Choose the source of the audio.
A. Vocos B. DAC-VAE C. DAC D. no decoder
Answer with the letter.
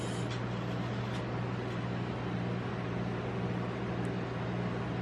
D